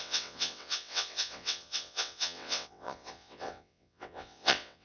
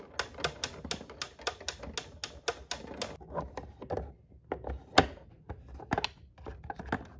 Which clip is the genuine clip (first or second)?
second